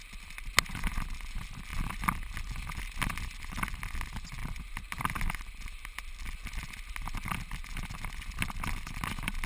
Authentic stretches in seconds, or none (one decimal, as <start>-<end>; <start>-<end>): 0.0-9.5